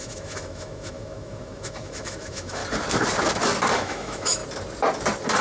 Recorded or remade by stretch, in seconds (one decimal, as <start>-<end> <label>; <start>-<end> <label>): 0.0-2.6 remade; 2.6-3.7 recorded; 3.7-4.4 remade; 4.4-5.4 recorded